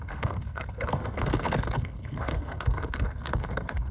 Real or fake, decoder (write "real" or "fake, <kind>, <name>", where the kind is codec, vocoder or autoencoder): fake, codec, SNAC